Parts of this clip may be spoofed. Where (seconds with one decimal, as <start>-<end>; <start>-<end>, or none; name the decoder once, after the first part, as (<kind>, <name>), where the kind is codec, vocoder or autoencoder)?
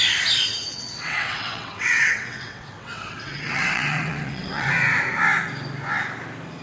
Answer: 0.7-4.7 (vocoder, WaveNeXt)